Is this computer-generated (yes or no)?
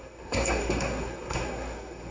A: yes